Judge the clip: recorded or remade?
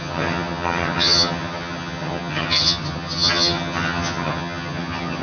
remade